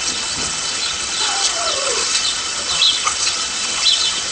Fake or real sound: fake